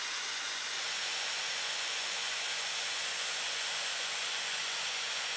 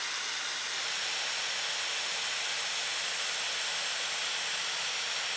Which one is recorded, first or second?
second